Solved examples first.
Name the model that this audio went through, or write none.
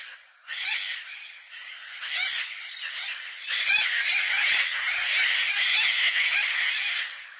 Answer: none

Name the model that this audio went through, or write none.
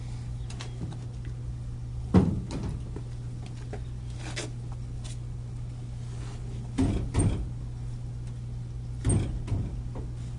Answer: none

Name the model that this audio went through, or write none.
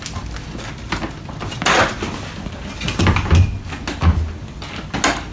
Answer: none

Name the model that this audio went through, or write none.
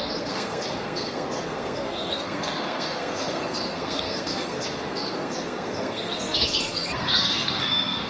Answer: codec, SNAC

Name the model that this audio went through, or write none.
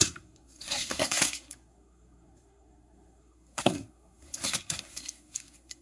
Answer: codec, SNAC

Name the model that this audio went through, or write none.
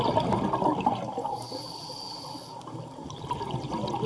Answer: vocoder, BigVGAN v2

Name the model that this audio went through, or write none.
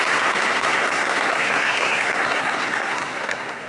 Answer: codec, SNAC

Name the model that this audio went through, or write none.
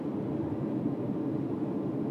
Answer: none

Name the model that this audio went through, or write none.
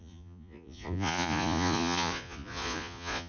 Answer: vocoder, Vocos